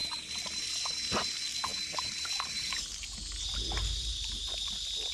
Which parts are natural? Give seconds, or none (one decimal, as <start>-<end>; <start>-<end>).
0.0-5.1